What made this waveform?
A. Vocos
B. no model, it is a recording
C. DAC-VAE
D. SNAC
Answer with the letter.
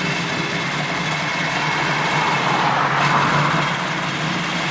B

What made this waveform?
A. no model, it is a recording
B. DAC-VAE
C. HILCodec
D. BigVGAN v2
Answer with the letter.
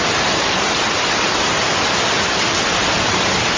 A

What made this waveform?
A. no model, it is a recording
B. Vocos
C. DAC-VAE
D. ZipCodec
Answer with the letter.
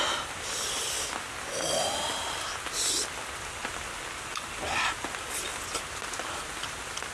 A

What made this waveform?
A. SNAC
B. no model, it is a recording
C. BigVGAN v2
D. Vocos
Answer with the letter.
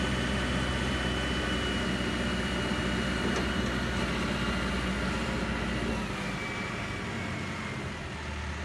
B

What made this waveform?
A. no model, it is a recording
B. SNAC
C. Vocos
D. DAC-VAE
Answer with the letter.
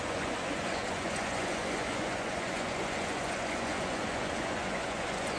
C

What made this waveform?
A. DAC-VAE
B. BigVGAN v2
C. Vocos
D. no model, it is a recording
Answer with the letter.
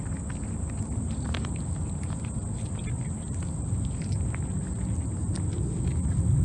D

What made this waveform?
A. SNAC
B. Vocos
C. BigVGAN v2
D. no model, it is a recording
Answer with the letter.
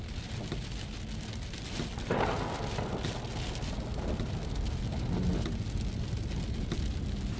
D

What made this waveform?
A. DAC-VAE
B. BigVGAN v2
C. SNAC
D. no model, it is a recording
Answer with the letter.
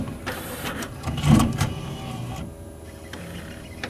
B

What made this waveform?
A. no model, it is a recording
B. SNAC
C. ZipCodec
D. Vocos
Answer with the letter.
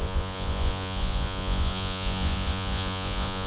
D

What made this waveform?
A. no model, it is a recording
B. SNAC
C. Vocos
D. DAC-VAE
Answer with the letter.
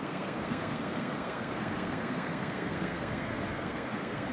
B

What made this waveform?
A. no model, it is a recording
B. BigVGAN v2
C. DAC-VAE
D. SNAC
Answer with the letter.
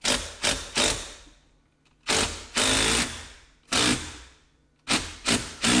A